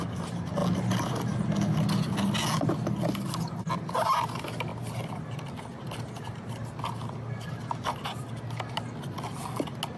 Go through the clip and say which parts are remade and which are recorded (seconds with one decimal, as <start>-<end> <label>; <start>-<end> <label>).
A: 0.0-10.0 recorded